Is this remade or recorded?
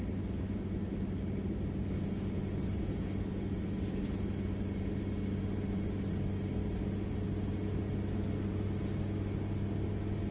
recorded